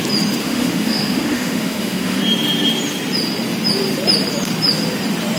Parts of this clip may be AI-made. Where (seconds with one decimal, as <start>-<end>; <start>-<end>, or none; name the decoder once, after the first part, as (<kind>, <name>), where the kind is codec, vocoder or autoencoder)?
0.4-2.2 (autoencoder, DAC-VAE)